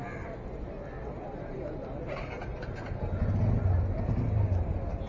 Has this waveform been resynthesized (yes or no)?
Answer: no